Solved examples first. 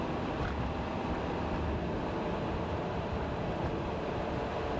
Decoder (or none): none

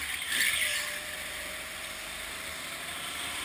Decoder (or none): none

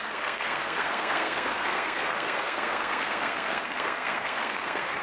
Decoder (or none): codec, SNAC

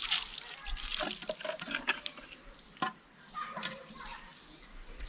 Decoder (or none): none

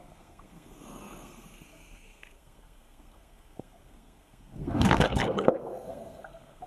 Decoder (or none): codec, SNAC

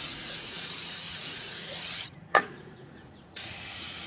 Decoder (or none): vocoder, Vocos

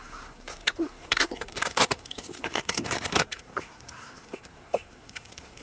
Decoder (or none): codec, SNAC